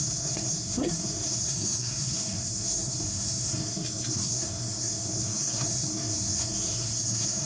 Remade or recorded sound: remade